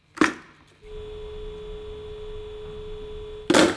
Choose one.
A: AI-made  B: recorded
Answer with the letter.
B